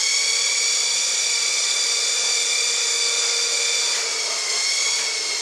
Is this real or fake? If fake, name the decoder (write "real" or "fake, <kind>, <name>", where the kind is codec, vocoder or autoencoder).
real